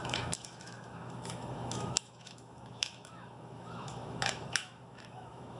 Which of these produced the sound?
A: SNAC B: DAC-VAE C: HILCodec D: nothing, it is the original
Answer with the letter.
B